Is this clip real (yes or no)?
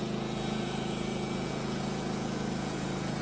no